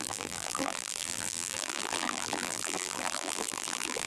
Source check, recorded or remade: remade